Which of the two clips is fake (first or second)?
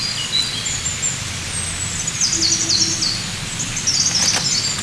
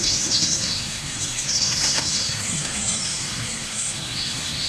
second